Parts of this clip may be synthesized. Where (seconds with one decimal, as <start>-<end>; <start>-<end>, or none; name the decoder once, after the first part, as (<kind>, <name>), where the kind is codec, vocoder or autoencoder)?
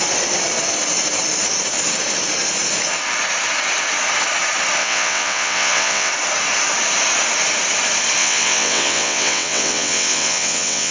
4.8-6.1 (vocoder, WaveNeXt); 8.2-10.9